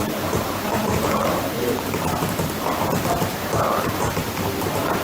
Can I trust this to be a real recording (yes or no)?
no